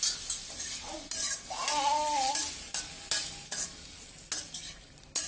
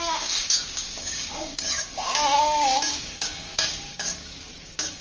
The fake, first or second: second